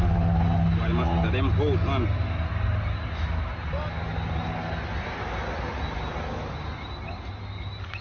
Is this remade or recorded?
recorded